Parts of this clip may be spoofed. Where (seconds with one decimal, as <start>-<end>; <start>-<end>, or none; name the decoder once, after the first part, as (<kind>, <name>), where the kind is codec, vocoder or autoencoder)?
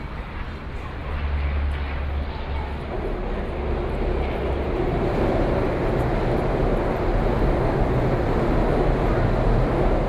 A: none